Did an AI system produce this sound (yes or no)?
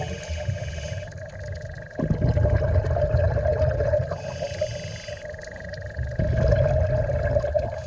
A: no